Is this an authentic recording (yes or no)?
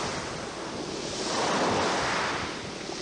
yes